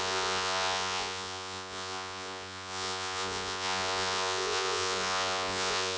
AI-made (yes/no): yes